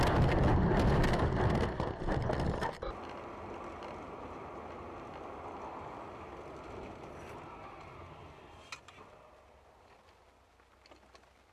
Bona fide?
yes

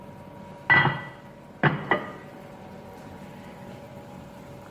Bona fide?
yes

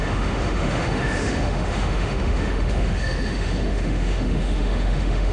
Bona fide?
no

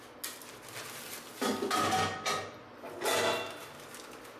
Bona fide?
yes